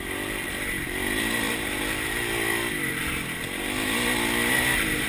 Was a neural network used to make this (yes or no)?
no